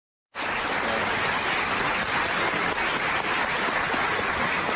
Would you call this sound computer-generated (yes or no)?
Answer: no